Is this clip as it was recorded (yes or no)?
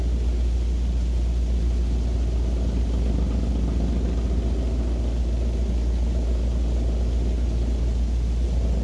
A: yes